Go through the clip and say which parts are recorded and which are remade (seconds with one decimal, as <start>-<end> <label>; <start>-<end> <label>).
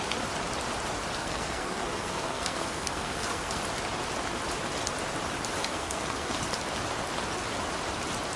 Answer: 0.0-1.2 recorded; 1.2-3.6 remade; 3.6-5.6 recorded; 5.6-6.4 remade; 6.4-8.4 recorded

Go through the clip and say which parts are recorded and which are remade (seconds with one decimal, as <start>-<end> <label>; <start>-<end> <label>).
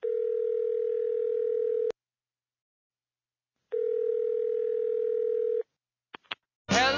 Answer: 0.0-7.0 recorded